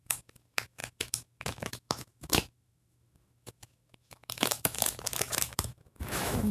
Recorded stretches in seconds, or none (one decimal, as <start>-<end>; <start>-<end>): none

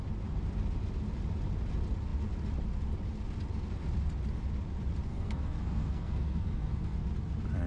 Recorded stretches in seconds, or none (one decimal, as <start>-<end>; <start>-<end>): 0.0-5.1; 7.1-7.7

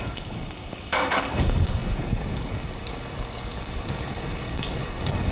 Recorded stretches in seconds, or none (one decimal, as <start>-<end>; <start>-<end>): none

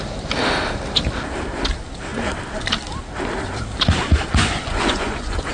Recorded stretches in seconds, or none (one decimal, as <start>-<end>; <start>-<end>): 0.0-4.3

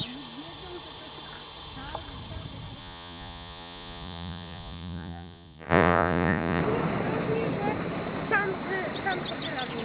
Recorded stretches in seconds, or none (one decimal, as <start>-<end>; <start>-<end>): 0.0-2.8; 6.6-9.8